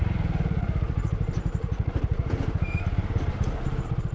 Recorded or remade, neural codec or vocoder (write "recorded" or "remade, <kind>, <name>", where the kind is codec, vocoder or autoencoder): remade, vocoder, BigVGAN v2